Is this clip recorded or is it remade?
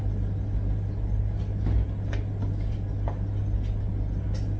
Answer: recorded